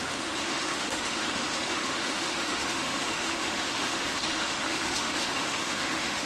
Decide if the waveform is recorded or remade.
remade